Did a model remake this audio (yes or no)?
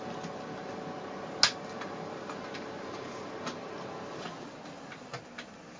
no